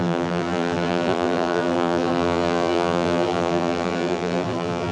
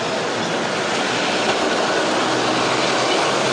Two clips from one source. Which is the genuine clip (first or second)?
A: second